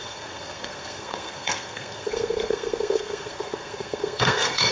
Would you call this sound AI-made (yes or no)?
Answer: yes